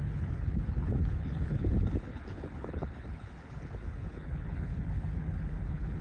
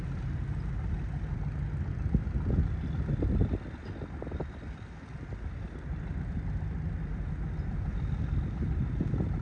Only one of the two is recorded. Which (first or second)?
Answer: second